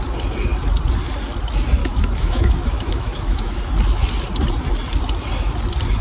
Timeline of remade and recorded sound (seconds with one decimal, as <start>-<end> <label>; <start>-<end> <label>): 0.0-1.8 recorded; 1.8-3.7 remade; 3.7-6.0 recorded